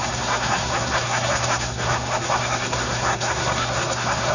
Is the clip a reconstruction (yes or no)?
yes